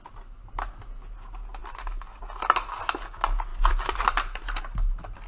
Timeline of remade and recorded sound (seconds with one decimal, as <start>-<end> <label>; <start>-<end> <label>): 0.0-3.5 recorded; 3.5-4.6 remade; 4.6-5.3 recorded